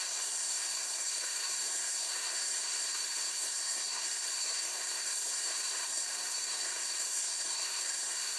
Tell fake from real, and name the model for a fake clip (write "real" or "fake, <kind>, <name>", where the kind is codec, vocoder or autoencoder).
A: fake, codec, SNAC